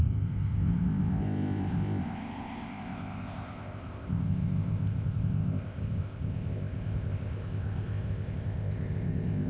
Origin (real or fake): fake